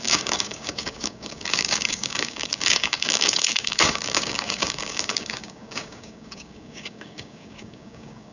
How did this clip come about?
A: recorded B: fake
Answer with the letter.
B